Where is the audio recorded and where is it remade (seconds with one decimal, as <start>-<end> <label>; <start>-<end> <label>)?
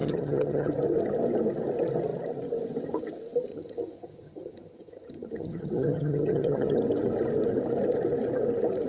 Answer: 0.0-0.7 remade; 0.7-3.5 recorded; 3.5-6.8 remade; 6.8-8.9 recorded